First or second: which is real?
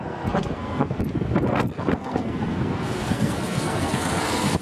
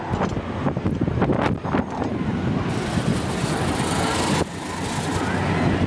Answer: second